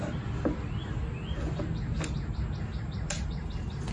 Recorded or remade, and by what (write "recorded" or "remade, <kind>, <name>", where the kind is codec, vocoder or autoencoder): recorded